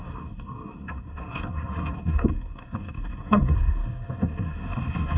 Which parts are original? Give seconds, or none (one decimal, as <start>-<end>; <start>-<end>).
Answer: none